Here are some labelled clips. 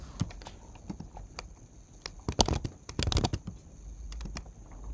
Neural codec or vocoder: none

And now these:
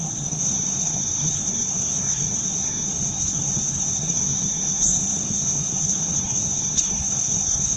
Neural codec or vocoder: codec, SNAC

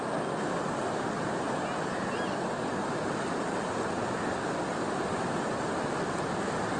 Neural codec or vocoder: none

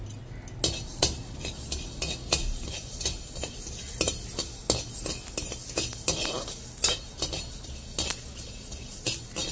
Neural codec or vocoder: none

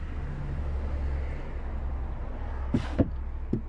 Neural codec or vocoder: none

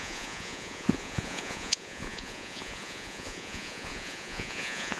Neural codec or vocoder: vocoder, Vocos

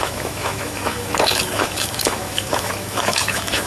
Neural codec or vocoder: autoencoder, DAC-VAE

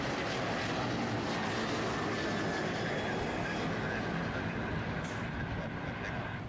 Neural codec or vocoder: none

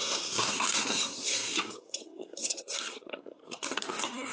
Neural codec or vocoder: codec, SNAC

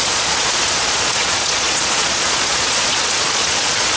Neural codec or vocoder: vocoder, Vocos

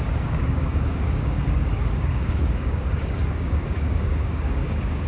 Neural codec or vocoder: codec, DAC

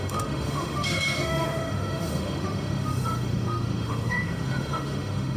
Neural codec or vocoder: autoencoder, DAC-VAE